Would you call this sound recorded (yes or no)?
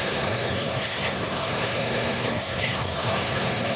no